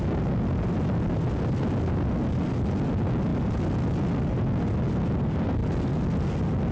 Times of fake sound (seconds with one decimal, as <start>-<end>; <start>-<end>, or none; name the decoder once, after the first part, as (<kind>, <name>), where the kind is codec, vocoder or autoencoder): none